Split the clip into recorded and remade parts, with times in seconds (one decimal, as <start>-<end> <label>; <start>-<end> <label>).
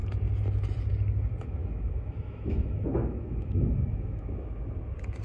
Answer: 0.0-1.6 recorded; 1.6-4.7 remade; 4.7-5.2 recorded